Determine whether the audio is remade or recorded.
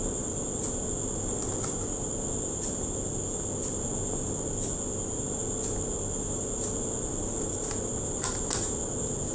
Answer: recorded